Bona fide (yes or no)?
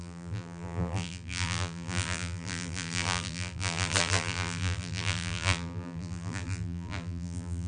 no